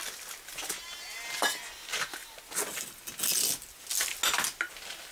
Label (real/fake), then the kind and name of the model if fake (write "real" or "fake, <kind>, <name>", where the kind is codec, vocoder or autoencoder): real